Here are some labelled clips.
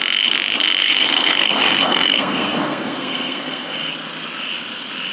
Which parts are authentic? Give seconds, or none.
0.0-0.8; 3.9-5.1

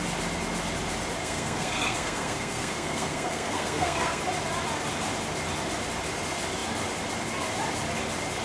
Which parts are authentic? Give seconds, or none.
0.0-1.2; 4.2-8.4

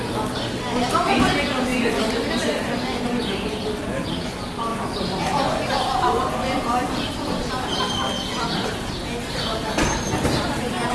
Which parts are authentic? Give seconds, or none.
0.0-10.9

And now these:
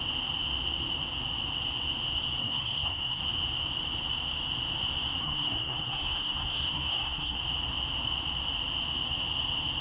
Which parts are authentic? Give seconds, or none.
0.0-2.4; 3.2-5.2; 7.4-9.8

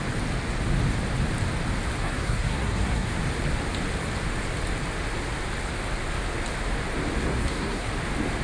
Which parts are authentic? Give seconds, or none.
0.0-2.0; 3.2-7.3; 7.9-8.4

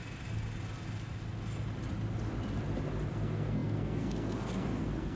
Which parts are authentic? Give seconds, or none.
0.0-3.1